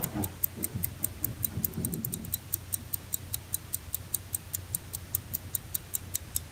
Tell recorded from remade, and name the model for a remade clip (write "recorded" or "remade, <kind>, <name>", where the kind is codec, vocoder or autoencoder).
recorded